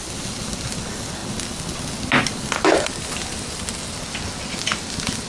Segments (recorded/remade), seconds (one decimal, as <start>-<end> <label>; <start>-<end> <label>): 0.0-5.3 recorded